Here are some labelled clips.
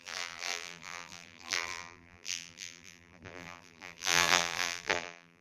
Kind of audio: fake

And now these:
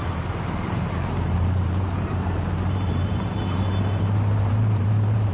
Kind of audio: fake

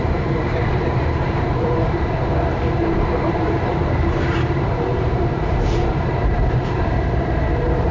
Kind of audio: fake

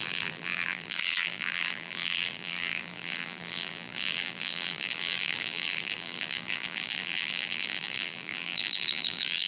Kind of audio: fake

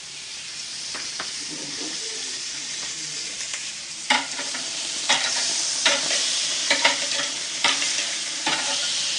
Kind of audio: fake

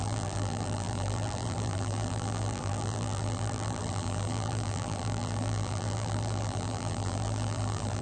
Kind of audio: fake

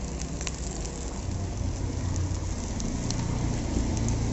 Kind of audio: real